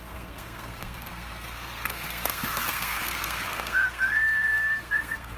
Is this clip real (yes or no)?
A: no